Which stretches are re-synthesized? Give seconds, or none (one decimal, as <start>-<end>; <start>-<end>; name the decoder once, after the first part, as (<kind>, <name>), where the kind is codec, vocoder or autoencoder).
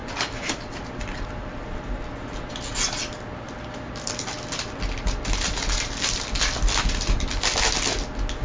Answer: 0.0-1.8 (vocoder, BigVGAN v2)